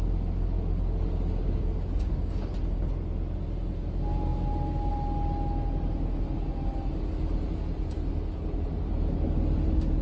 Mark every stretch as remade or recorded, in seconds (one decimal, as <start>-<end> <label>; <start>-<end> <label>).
0.0-1.4 recorded; 1.4-2.5 remade; 2.5-10.0 recorded